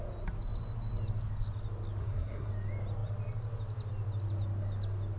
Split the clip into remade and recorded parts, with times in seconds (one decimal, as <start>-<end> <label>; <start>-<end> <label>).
0.0-2.0 recorded; 2.0-2.5 remade; 2.5-5.2 recorded